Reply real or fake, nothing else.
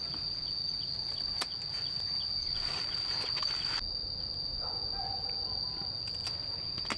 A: real